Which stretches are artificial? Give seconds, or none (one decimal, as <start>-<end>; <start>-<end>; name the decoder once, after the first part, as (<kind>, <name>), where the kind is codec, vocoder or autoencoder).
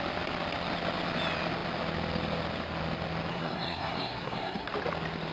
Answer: 3.3-4.7 (codec, SNAC)